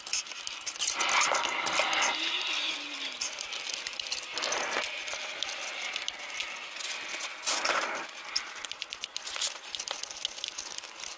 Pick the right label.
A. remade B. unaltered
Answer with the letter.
B